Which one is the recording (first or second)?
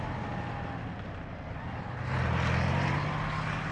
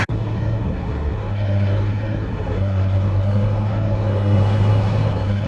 first